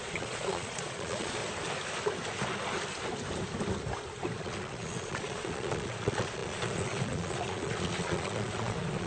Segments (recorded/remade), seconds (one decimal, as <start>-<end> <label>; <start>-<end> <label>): 0.0-1.4 remade; 1.4-4.4 recorded; 4.4-9.1 remade